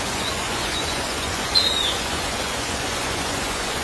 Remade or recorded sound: remade